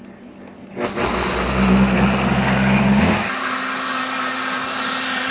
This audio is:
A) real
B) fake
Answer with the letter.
A